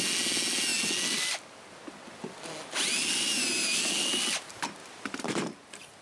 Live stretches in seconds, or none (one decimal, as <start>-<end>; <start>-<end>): 0.0-4.8; 5.4-6.0